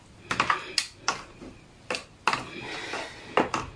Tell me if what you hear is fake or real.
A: real